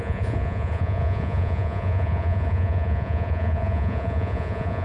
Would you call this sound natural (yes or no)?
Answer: no